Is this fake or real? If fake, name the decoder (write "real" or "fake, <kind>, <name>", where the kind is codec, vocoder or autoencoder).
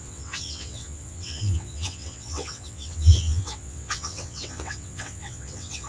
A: fake, vocoder, WaveNeXt